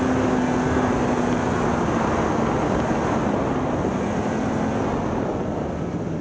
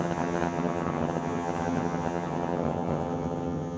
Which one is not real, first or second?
second